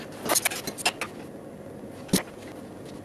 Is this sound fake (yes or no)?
no